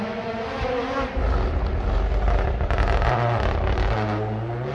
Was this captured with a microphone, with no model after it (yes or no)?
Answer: yes